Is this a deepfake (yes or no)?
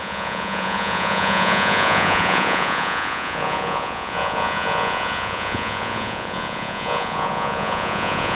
yes